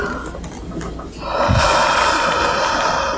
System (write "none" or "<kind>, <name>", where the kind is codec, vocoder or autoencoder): none